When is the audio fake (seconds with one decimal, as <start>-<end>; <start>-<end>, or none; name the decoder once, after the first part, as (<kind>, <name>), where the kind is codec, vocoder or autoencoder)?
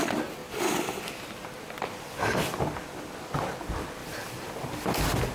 none